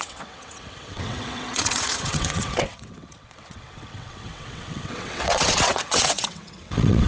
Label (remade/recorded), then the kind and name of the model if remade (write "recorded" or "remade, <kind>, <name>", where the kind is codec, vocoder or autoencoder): remade, vocoder, WaveNeXt